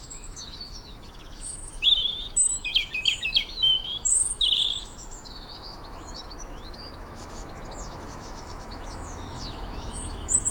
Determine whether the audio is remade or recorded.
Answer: remade